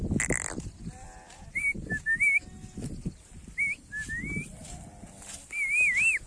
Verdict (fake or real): real